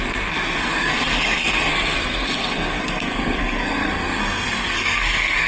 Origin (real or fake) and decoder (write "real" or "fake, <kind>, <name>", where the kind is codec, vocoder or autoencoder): fake, codec, SNAC